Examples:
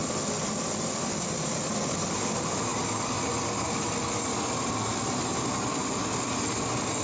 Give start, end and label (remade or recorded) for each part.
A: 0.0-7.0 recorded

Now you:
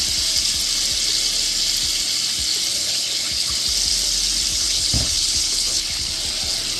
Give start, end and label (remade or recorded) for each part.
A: 0.0-2.7 recorded; 2.7-3.5 remade; 3.5-4.5 recorded; 4.5-6.1 remade; 6.1-6.8 recorded

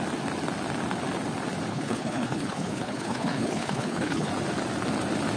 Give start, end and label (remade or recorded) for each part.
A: 0.0-1.7 recorded; 1.7-4.3 remade; 4.3-5.4 recorded

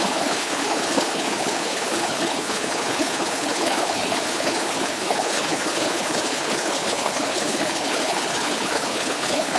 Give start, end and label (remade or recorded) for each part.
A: 0.0-9.6 remade

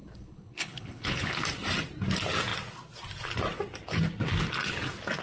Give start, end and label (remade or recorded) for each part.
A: 0.0-1.3 remade; 1.3-5.2 recorded

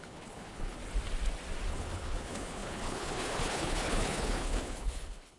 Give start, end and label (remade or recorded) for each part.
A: 0.0-0.8 remade; 0.8-1.7 recorded; 1.7-5.4 remade